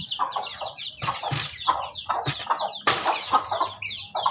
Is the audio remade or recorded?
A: recorded